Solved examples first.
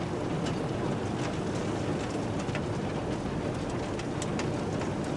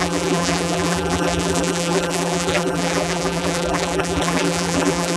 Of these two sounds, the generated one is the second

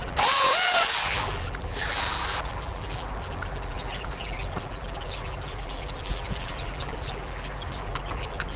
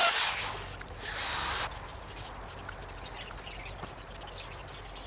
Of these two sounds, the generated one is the first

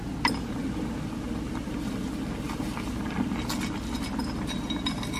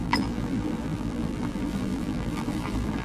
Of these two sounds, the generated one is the second